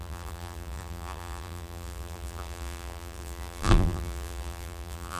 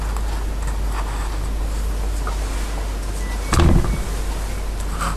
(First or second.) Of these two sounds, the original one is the second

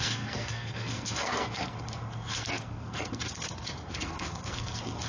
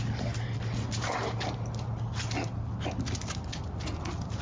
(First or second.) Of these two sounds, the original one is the second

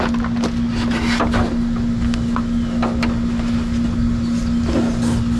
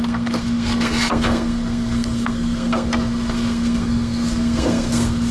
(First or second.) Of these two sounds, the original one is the first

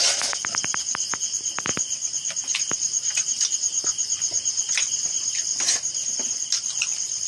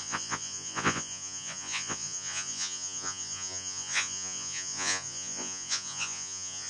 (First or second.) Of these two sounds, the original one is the first